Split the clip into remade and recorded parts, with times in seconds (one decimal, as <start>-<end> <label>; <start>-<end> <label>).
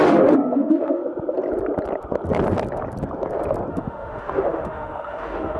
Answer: 0.0-1.0 remade; 1.0-3.7 recorded; 3.7-5.6 remade